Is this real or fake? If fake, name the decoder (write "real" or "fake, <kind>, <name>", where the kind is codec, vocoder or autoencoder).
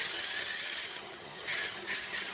fake, vocoder, HiFi-GAN